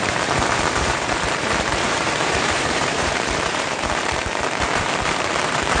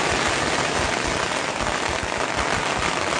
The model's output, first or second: first